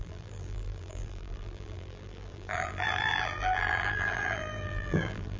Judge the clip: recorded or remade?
remade